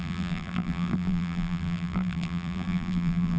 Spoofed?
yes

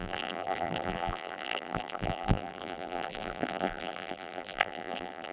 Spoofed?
yes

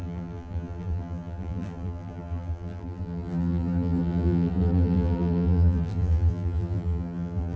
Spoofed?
yes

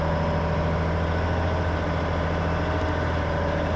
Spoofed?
no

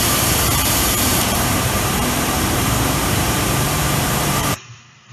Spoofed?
yes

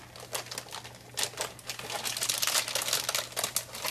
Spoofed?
no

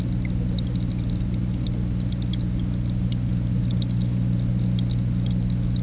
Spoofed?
no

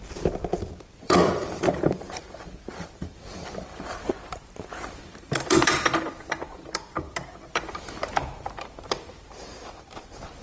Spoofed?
yes